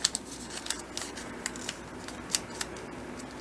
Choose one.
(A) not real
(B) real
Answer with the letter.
B